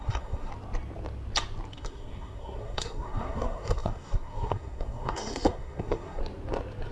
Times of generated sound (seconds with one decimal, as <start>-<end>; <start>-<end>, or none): 0.0-0.5; 1.7-6.2